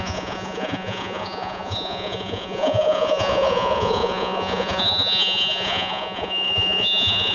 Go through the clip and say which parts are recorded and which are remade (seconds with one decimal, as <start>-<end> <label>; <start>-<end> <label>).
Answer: 0.0-7.3 remade